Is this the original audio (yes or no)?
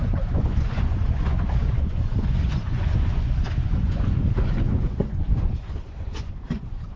no